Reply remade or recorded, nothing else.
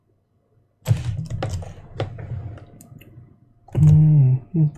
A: recorded